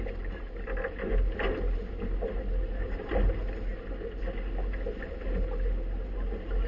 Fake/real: real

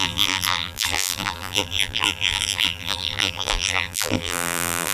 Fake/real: fake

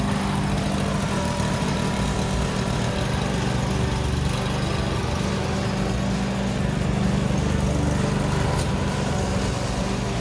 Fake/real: real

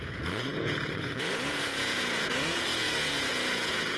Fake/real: fake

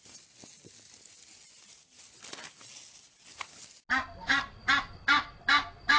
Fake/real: real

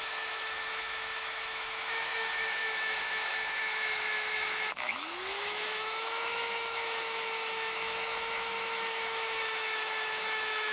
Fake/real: fake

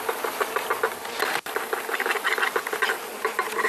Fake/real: real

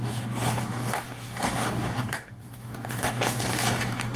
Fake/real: fake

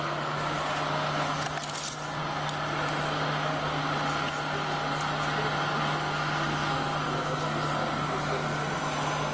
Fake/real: real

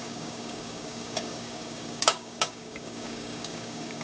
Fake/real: fake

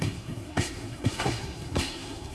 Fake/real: fake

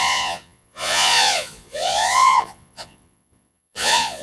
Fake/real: fake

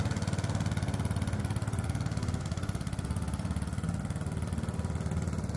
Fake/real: real